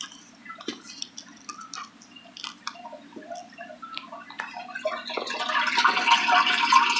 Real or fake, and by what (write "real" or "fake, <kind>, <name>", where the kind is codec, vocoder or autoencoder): real